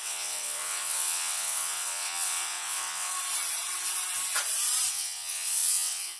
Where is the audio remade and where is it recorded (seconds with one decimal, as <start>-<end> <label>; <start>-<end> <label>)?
0.0-3.1 remade; 3.1-4.9 recorded; 4.9-6.2 remade